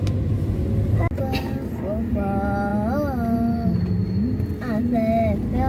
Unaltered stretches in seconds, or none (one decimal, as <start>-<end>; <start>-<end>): 0.0-5.7